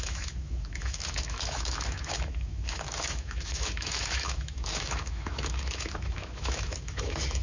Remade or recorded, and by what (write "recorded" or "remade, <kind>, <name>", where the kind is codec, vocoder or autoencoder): remade, autoencoder, DAC-VAE